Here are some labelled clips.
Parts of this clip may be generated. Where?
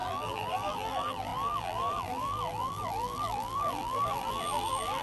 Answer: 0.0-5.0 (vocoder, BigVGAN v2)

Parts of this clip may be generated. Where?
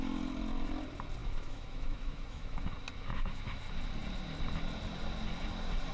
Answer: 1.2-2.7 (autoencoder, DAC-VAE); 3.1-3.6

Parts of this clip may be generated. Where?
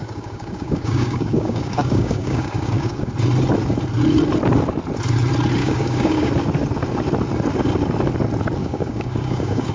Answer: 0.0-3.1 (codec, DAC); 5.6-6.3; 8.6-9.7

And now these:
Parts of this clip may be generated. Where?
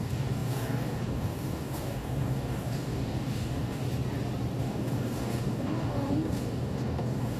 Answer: 0.0-3.8 (codec, DAC); 4.6-7.4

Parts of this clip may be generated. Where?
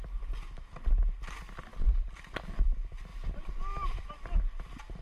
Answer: 1.7-2.5 (vocoder, BigVGAN v2); 3.1-4.1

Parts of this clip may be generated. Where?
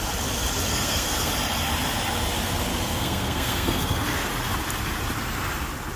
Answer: 0.7-1.3 (codec, SNAC); 2.7-4.3